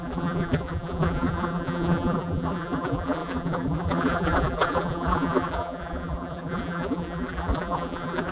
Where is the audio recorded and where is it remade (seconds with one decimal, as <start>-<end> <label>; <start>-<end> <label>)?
0.0-8.3 remade